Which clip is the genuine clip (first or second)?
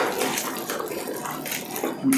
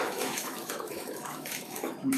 first